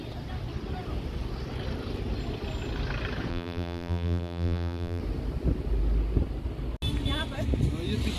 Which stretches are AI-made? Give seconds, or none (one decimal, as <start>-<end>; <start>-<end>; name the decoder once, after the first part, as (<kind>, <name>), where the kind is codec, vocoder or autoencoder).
3.3-5.0 (vocoder, BigVGAN v2)